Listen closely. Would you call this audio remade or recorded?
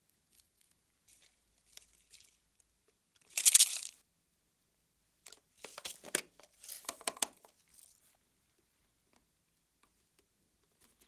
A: recorded